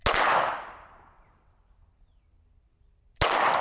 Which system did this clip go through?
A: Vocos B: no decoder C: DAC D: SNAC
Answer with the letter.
B